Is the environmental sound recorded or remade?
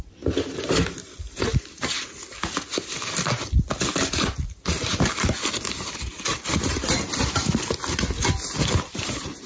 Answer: recorded